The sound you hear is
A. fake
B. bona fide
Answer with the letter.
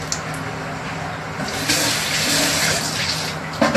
B